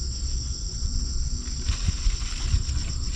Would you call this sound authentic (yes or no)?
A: yes